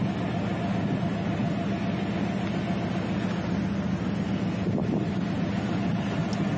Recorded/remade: recorded